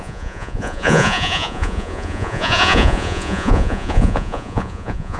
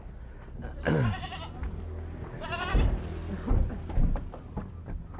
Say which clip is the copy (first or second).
first